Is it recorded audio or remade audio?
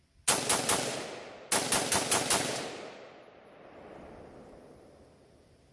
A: recorded